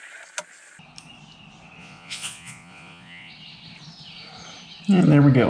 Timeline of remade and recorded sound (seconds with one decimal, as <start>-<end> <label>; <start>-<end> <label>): 0.0-1.8 recorded; 1.8-3.3 remade; 3.3-5.5 recorded